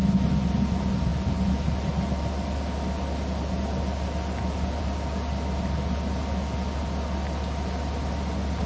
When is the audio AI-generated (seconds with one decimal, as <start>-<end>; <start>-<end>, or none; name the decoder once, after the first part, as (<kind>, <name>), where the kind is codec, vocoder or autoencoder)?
none